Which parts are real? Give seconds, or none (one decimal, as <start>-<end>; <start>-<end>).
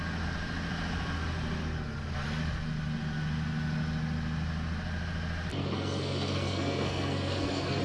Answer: 0.0-5.5